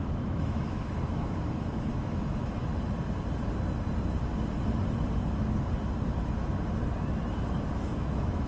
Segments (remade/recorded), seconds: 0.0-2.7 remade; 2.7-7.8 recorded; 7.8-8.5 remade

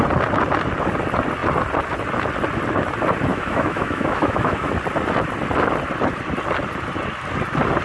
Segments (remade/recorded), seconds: 0.0-3.3 recorded; 3.3-4.7 remade; 4.7-7.8 recorded

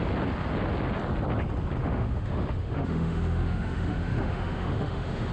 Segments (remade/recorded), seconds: 0.0-1.8 recorded; 1.8-5.3 remade

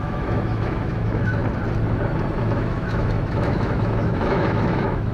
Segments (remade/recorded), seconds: 0.0-1.4 remade; 1.4-2.4 recorded; 2.4-5.1 remade

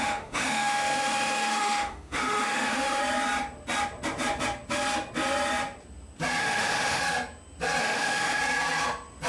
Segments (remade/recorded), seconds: 0.0-3.0 remade; 3.0-6.4 recorded; 6.4-7.0 remade; 7.0-7.8 recorded; 7.8-8.4 remade; 8.4-9.3 recorded

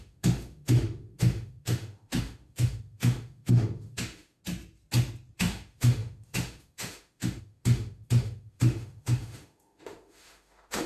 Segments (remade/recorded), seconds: 0.0-4.4 remade; 4.4-5.4 recorded; 5.4-10.9 remade

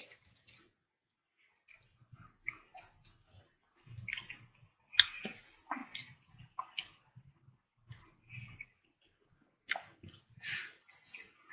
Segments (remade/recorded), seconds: 0.0-11.5 recorded

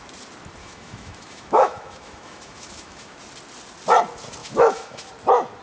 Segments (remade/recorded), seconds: 0.0-0.6 recorded; 0.6-3.2 remade; 3.2-4.4 recorded; 4.4-5.1 remade; 5.1-5.6 recorded